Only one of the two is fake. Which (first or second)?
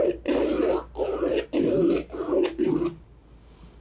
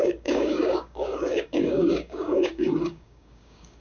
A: second